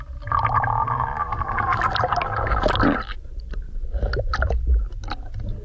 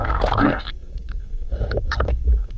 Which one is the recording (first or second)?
first